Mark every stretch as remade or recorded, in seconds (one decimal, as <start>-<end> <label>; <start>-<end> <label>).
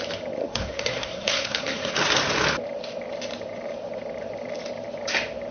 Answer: 0.0-0.4 recorded; 0.4-1.9 remade; 1.9-5.5 recorded